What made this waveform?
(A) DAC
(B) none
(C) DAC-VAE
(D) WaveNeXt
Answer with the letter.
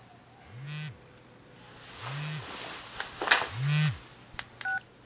B